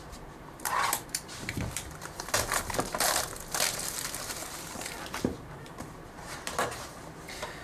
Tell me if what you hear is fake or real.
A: fake